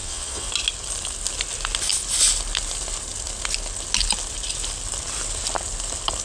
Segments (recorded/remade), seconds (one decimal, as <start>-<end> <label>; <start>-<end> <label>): 0.0-0.5 remade; 0.5-6.2 recorded